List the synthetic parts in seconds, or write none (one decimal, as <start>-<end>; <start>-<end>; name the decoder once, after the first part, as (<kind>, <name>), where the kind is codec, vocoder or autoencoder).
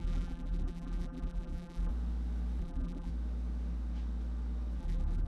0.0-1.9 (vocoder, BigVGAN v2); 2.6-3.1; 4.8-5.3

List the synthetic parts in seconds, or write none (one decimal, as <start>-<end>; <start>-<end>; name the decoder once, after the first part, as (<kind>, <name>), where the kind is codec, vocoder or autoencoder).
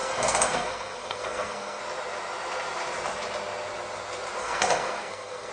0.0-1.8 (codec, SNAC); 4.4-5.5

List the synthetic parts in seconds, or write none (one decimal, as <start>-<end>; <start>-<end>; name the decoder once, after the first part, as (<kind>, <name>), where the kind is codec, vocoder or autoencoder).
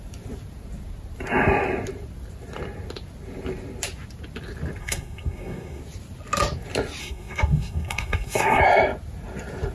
4.8-5.8 (codec, SNAC); 7.0-8.6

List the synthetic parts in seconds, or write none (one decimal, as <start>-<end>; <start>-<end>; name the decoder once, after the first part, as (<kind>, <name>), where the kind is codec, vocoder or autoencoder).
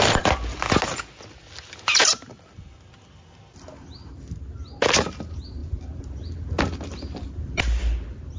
none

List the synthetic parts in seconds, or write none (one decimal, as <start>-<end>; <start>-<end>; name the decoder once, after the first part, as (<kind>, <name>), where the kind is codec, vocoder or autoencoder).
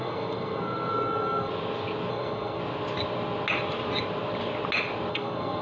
0.0-1.5 (codec, SNAC); 2.1-2.6; 5.1-5.6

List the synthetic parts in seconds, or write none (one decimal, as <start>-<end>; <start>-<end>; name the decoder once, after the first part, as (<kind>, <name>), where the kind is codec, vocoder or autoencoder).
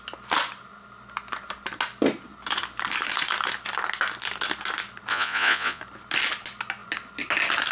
5.1-5.8 (vocoder, Vocos)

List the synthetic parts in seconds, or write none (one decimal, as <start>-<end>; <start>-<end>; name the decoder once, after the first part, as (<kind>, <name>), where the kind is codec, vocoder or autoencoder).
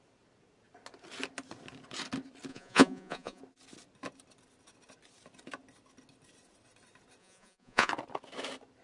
2.5-3.4 (vocoder, Vocos); 7.2-7.9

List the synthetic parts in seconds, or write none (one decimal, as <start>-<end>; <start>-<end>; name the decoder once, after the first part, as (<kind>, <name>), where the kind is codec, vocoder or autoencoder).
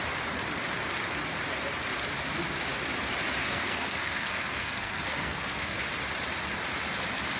3.4-5.8 (codec, SNAC)